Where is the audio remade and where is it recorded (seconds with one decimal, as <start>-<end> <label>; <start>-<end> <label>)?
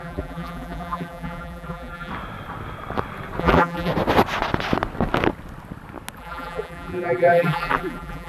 0.0-2.1 remade; 2.1-3.4 recorded; 3.4-3.9 remade; 3.9-6.2 recorded; 6.2-8.3 remade